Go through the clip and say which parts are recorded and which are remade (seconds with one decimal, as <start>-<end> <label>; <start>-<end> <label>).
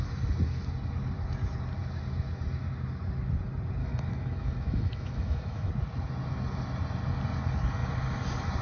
0.0-3.8 recorded; 3.8-5.7 remade; 5.7-8.6 recorded